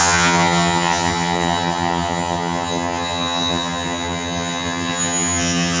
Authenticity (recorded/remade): remade